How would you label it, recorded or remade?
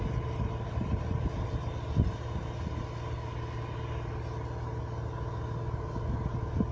recorded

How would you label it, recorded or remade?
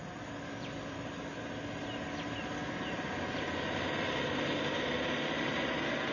recorded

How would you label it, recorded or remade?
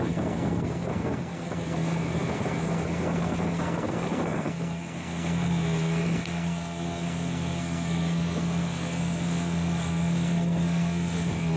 remade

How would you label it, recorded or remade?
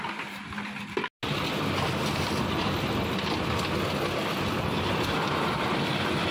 recorded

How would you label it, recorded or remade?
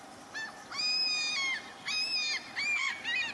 recorded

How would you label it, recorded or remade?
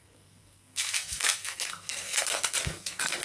remade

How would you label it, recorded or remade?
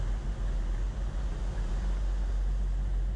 recorded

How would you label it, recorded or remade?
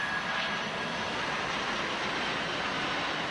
recorded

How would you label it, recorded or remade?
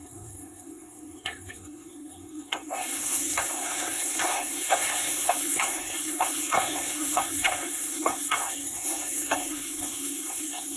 remade